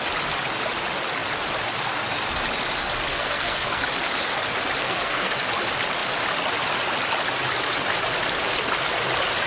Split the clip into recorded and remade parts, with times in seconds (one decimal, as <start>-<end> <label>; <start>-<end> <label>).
0.0-3.1 recorded; 3.1-3.8 remade; 3.8-4.8 recorded; 4.8-5.3 remade; 5.3-9.5 recorded